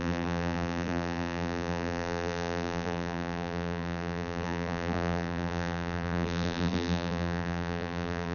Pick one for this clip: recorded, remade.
remade